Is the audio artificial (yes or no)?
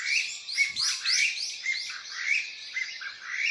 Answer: no